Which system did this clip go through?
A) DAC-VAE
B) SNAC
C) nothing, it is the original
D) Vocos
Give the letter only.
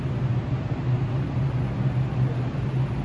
C